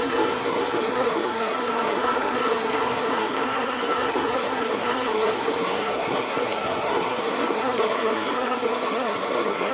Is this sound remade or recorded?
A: remade